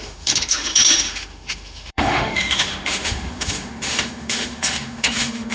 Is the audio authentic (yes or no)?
no